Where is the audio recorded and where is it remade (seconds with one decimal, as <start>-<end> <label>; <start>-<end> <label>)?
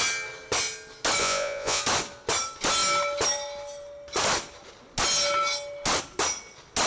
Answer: 0.0-1.2 recorded; 1.2-1.8 remade; 1.8-6.9 recorded